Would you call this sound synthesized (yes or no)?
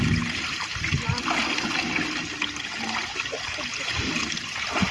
no